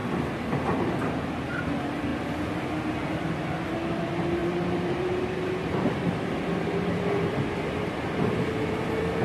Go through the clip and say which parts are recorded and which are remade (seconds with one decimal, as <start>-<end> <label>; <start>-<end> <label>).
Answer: 0.0-1.6 remade; 1.6-4.4 recorded; 4.4-9.2 remade